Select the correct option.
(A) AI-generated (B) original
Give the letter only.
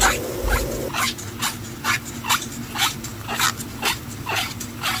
B